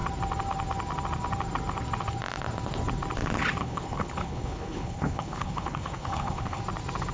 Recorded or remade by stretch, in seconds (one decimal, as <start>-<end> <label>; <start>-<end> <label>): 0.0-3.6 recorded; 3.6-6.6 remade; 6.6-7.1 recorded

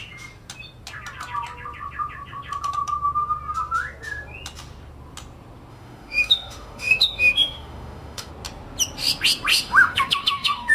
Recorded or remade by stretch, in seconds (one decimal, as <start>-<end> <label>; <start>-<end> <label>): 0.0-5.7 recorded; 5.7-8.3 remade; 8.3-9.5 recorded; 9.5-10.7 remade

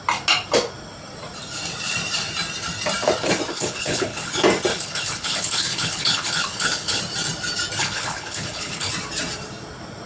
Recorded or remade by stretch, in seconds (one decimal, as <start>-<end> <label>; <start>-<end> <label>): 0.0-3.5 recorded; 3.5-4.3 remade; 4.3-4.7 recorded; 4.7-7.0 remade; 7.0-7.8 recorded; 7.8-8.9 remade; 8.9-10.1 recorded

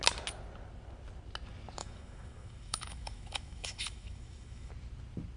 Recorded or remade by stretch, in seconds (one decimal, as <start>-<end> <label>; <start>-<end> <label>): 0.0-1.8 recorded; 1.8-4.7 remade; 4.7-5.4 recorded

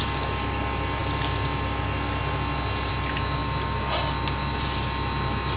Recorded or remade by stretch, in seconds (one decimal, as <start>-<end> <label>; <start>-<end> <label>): 0.0-5.6 recorded